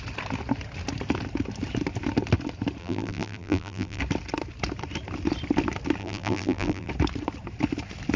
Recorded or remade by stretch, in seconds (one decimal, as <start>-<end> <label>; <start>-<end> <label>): 0.0-2.8 recorded; 2.8-4.0 remade; 4.0-6.0 recorded; 6.0-6.9 remade; 6.9-8.2 recorded

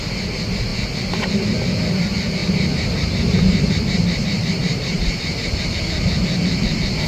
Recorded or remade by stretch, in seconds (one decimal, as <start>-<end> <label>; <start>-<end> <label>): 0.0-2.4 recorded; 2.4-5.7 remade; 5.7-7.1 recorded

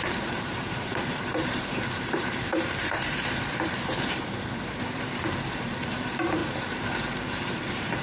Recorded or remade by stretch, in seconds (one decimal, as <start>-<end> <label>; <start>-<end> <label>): 0.0-8.0 remade

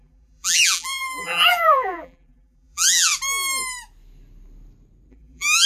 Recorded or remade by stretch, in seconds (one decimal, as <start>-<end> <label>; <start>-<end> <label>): 0.0-3.1 remade; 3.1-5.1 recorded; 5.1-5.7 remade

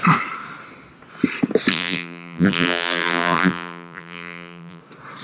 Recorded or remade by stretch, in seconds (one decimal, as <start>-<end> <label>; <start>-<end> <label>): 0.0-1.7 recorded; 1.7-4.8 remade; 4.8-5.2 recorded

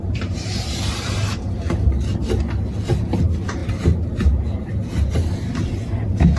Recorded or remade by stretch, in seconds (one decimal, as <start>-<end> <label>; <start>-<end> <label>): 0.0-1.6 remade; 1.6-6.4 recorded

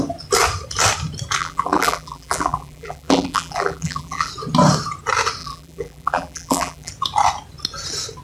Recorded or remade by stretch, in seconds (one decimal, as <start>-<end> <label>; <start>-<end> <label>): 0.0-1.4 recorded; 1.4-4.3 remade; 4.3-5.4 recorded; 5.4-6.9 remade; 6.9-8.2 recorded

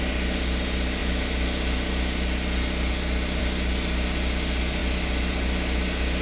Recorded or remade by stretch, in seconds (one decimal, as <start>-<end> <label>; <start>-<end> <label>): 0.0-6.2 recorded